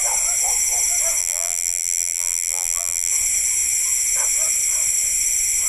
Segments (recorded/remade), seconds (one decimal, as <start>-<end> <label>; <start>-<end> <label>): 0.0-1.2 recorded; 1.2-3.1 remade; 3.1-5.7 recorded